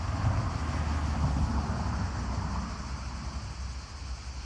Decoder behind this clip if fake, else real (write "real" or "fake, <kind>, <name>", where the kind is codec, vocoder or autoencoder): real